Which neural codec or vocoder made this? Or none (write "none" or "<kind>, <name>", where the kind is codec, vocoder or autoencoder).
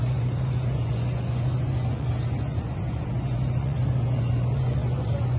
vocoder, Vocos